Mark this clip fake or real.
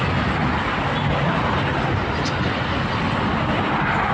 real